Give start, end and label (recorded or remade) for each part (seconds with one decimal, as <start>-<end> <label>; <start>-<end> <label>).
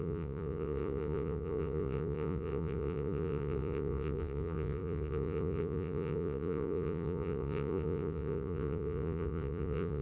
0.0-10.0 remade